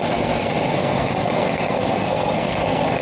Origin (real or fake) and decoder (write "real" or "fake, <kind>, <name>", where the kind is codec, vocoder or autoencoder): fake, codec, SNAC